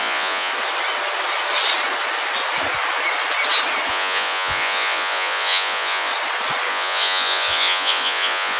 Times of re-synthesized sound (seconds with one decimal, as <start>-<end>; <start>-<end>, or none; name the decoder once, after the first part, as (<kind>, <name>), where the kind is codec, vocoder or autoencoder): 0.0-0.5 (vocoder, Vocos); 3.9-6.1; 6.7-8.6